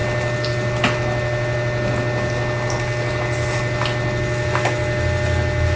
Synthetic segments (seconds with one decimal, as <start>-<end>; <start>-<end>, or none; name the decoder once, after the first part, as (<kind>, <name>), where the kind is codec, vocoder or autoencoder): none